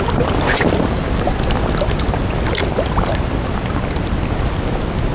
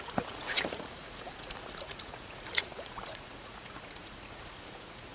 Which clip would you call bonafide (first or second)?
first